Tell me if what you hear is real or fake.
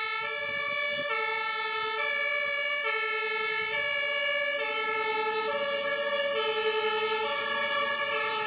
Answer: real